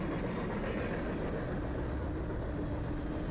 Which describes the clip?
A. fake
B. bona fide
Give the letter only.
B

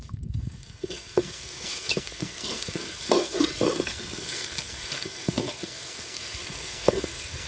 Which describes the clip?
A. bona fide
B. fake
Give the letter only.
B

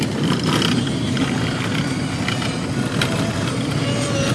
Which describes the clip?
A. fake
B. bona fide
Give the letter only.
B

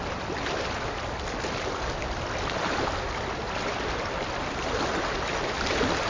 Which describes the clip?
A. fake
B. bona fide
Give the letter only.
B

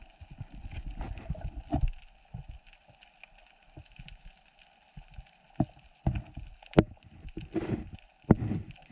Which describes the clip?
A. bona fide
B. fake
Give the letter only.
A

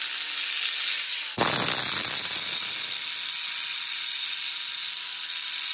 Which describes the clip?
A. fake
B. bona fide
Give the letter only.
B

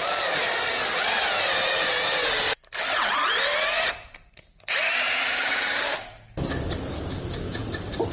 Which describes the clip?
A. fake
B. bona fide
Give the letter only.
B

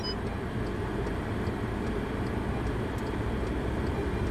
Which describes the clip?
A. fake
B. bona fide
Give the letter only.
B